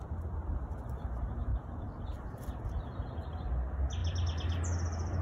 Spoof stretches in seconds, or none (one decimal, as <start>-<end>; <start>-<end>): none